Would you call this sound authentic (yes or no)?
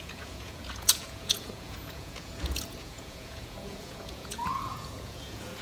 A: no